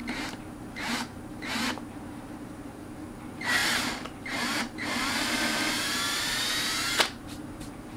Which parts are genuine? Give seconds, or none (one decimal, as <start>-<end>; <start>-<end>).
none